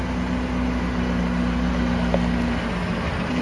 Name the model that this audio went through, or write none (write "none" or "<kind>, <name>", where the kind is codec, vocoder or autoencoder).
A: none